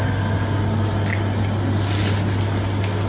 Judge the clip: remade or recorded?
recorded